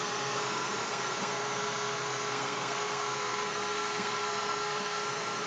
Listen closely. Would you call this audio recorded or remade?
remade